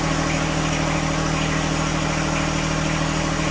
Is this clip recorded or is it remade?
recorded